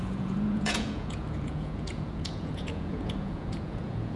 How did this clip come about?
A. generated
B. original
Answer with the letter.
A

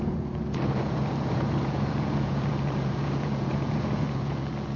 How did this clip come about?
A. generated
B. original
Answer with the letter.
A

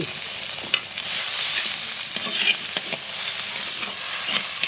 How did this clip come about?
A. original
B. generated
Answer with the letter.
A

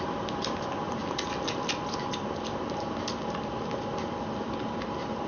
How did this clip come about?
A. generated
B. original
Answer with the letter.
B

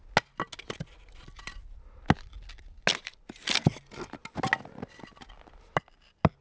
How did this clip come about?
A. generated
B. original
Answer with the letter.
B